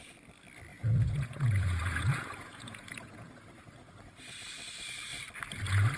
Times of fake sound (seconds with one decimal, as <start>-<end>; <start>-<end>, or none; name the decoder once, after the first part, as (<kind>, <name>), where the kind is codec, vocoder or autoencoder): 0.7-3.3 (vocoder, Vocos)